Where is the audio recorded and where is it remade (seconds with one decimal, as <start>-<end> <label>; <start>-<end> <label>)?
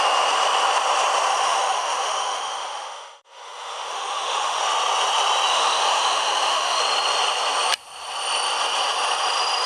0.0-1.3 recorded; 1.3-4.6 remade; 4.6-5.5 recorded; 5.5-6.8 remade; 6.8-9.7 recorded